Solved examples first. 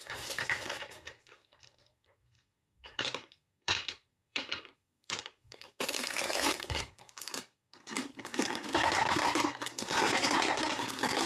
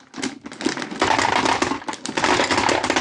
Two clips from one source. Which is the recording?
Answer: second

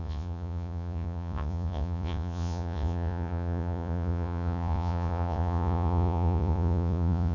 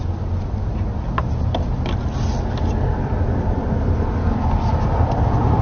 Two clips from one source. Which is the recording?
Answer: second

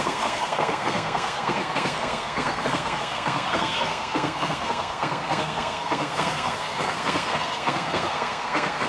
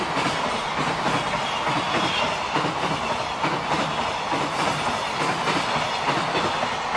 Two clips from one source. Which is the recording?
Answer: second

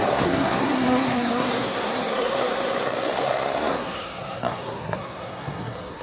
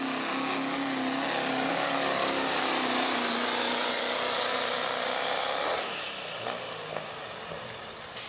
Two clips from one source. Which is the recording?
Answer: second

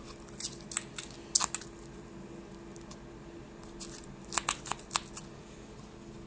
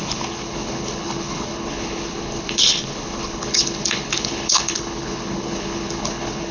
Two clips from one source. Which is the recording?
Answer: first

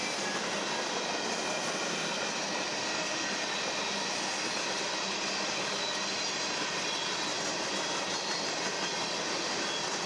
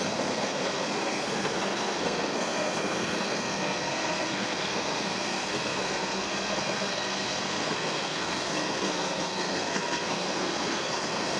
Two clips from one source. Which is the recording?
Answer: first